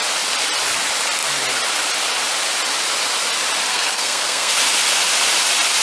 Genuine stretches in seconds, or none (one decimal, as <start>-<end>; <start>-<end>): 0.0-3.7; 4.5-5.8

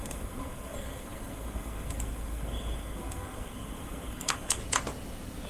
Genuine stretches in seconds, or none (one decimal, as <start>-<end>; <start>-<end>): 4.6-5.5

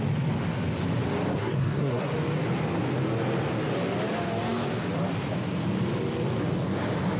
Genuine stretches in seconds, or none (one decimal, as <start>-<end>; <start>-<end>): 0.0-1.3; 2.1-7.2

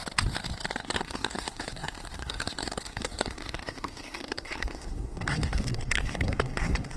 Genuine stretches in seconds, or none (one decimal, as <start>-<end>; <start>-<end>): 0.0-0.8

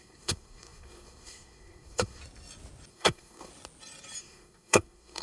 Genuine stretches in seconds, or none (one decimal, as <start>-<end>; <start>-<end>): 2.2-2.9; 3.5-4.2